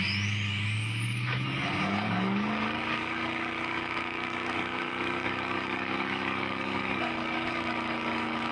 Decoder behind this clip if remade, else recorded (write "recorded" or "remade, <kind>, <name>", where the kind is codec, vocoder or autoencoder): remade, codec, DAC